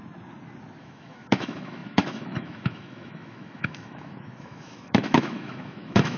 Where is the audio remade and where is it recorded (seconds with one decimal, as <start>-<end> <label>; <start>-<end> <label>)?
0.0-0.8 recorded; 0.8-6.2 remade